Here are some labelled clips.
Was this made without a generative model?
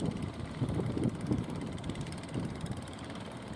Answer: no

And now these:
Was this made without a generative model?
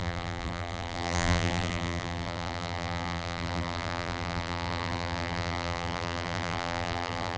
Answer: no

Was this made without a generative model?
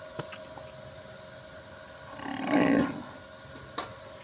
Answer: yes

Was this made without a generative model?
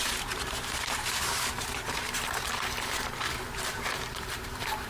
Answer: no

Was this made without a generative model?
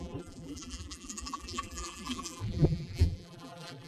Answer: no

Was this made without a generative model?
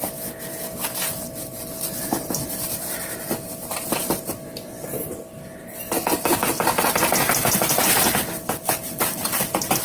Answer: yes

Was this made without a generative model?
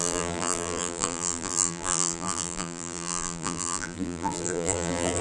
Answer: no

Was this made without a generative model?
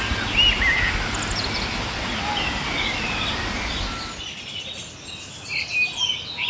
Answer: yes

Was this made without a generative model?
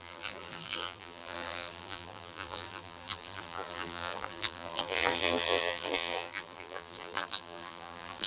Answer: no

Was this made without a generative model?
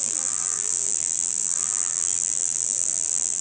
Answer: no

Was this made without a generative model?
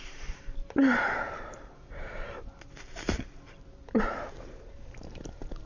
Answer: no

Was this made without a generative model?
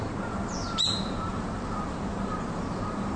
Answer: no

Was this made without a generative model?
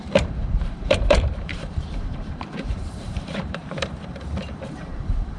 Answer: no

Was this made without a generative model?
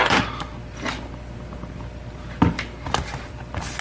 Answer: yes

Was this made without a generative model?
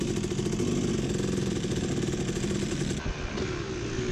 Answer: yes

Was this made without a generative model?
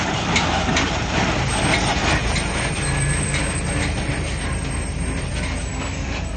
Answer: no